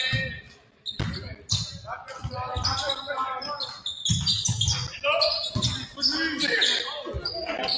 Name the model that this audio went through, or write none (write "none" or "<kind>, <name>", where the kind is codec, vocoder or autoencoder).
none